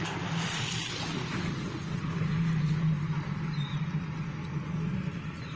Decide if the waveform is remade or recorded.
recorded